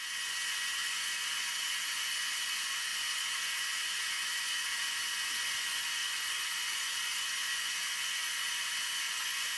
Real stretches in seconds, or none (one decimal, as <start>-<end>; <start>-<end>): none